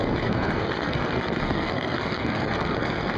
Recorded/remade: remade